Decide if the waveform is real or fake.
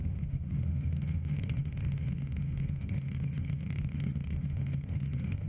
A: fake